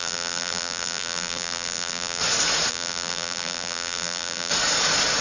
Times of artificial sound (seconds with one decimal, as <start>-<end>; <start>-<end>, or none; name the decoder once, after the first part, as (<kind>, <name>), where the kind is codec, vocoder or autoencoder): 0.0-2.2 (vocoder, BigVGAN v2); 2.7-4.5